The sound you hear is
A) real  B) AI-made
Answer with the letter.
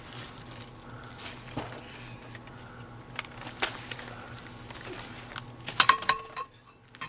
A